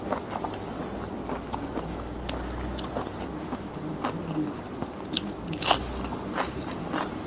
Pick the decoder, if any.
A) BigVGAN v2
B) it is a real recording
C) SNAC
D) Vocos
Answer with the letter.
B